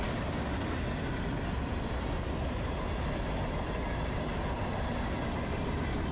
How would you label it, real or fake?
real